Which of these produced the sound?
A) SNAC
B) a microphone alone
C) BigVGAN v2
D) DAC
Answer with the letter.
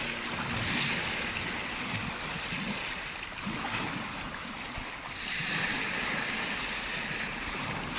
B